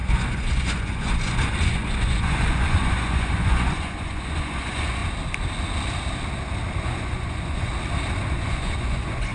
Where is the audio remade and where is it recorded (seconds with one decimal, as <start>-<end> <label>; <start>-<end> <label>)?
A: 0.0-5.0 remade; 5.0-6.8 recorded; 6.8-7.7 remade; 7.7-8.3 recorded; 8.3-9.3 remade